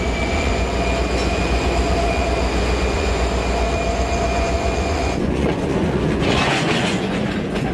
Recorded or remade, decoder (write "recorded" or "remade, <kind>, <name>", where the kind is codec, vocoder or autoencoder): remade, vocoder, Vocos